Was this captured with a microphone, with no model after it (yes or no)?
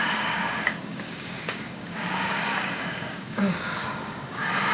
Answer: no